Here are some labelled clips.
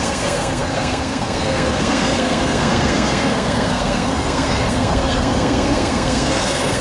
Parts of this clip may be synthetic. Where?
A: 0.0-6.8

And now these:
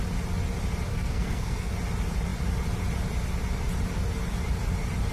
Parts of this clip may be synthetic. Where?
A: 0.9-1.7

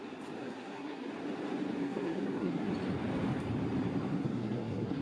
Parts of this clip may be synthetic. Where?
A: 0.4-1.1; 1.8-2.7; 4.1-5.0